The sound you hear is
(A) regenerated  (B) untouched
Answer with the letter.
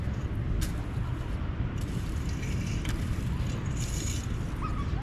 B